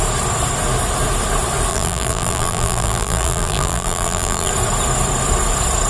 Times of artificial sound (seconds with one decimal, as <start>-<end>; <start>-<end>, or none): 1.7-4.5